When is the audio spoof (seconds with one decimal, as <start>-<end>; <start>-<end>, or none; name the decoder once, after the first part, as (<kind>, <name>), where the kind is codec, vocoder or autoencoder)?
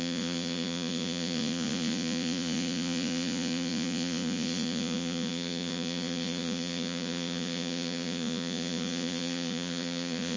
0.0-10.4 (vocoder, Vocos)